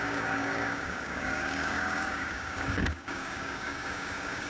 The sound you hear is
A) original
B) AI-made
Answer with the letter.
B